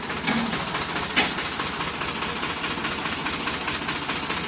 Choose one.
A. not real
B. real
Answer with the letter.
B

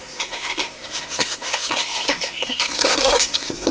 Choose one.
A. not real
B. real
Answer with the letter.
A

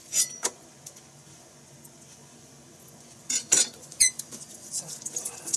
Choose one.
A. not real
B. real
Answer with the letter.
A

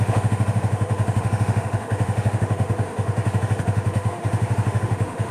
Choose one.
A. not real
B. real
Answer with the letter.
A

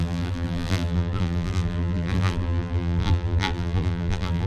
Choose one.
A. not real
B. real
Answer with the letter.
A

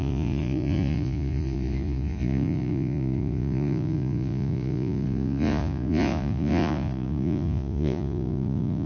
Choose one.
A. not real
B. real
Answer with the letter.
A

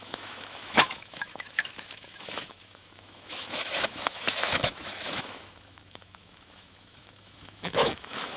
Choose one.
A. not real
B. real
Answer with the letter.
A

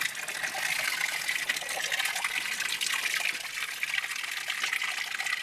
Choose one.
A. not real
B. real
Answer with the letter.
B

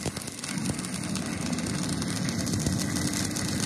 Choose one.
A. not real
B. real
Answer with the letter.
B